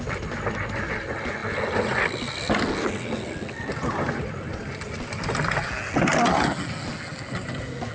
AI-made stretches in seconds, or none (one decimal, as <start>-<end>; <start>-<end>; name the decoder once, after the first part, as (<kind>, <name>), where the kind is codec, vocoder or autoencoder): 1.4-2.9 (vocoder, BigVGAN v2)